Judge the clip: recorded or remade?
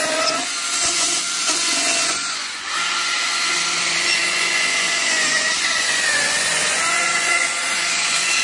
remade